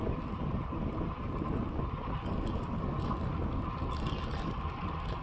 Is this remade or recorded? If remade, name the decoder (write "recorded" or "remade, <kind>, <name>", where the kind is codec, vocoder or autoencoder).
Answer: recorded